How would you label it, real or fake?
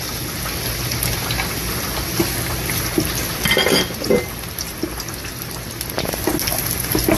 real